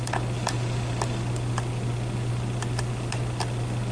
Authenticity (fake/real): real